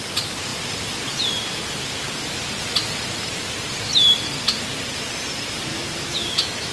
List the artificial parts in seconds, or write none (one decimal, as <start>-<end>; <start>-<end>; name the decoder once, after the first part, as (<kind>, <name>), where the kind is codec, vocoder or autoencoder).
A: 5.7-6.7 (autoencoder, DAC-VAE)